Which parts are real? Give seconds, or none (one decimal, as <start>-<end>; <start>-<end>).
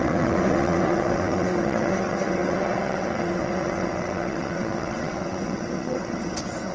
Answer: none